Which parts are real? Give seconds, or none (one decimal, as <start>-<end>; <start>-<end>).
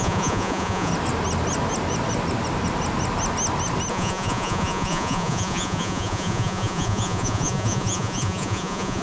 0.9-3.9